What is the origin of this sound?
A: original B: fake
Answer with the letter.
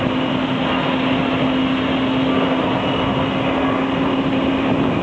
A